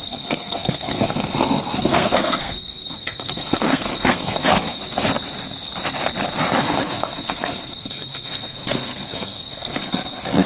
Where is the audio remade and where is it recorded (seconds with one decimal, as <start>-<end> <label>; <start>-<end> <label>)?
0.0-4.8 remade; 4.8-6.6 recorded; 6.6-10.5 remade